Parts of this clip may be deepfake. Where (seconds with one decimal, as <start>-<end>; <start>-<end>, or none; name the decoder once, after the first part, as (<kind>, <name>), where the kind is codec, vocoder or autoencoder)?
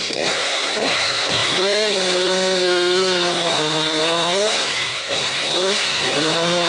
0.0-6.7 (codec, SNAC)